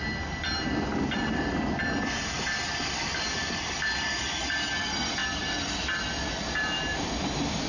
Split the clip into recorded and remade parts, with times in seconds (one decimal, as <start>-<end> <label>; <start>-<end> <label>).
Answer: 0.0-7.7 recorded